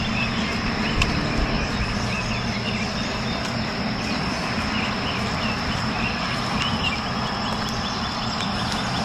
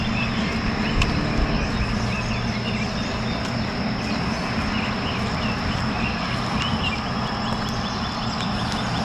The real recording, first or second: second